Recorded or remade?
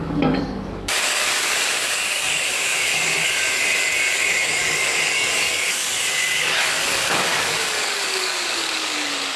remade